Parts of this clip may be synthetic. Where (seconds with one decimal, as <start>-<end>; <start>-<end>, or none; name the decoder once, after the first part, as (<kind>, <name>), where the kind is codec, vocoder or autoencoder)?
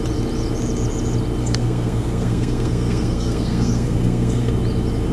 1.4-4.5 (codec, SNAC)